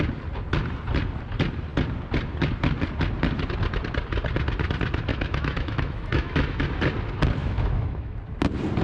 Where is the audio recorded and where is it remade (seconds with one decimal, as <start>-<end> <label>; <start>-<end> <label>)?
0.0-5.1 recorded; 5.1-6.6 remade; 6.6-7.4 recorded; 7.4-8.2 remade; 8.2-8.8 recorded